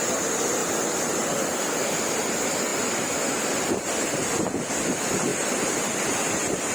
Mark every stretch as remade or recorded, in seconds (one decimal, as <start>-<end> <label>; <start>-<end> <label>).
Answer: 0.0-0.6 recorded; 0.6-2.0 remade; 2.0-5.3 recorded; 5.3-6.2 remade; 6.2-6.7 recorded